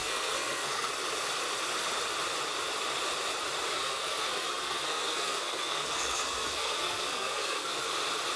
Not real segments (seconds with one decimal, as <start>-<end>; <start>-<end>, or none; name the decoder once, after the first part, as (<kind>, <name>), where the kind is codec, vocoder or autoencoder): 0.0-0.9 (codec, SNAC); 3.7-7.9